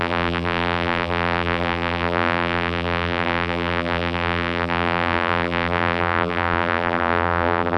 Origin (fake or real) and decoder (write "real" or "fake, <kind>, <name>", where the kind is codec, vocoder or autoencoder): fake, vocoder, BigVGAN v2